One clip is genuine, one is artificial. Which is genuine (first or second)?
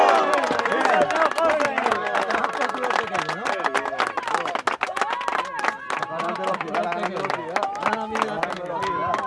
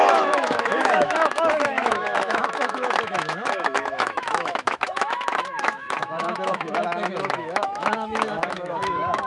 first